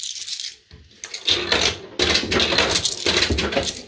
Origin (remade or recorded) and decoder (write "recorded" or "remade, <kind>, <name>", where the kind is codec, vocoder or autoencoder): recorded